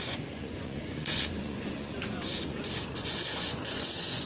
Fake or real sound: fake